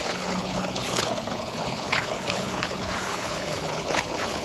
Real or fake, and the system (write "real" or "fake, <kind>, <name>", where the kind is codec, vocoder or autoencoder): fake, codec, HILCodec